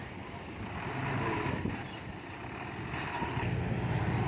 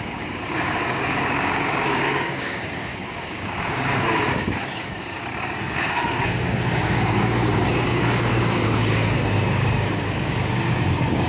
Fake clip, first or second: second